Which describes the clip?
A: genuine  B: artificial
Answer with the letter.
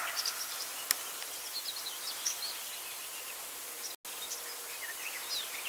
A